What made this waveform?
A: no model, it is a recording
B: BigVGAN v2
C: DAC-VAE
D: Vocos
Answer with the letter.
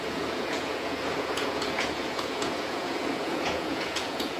D